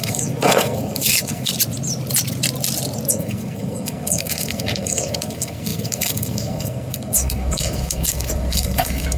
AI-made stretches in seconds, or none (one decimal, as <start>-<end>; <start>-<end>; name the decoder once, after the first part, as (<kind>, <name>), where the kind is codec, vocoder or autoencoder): 0.0-1.5 (codec, SNAC); 3.1-9.2